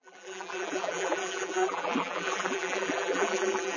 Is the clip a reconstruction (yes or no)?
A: yes